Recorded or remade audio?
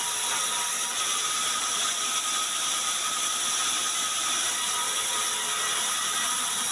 recorded